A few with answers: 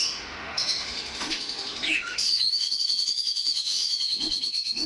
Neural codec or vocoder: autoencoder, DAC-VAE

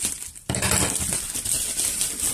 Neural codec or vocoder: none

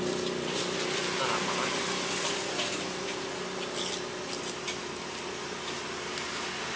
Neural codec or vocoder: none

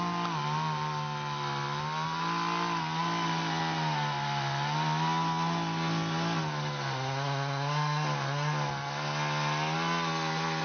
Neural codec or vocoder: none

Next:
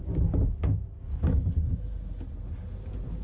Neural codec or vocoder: none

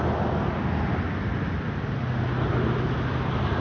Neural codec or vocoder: none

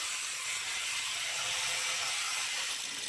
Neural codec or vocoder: none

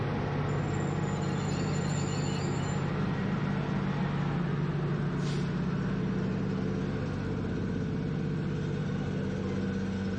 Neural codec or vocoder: none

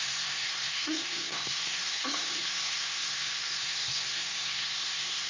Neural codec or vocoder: codec, SNAC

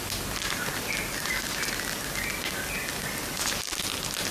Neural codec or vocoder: none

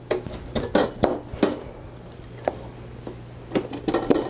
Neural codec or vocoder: none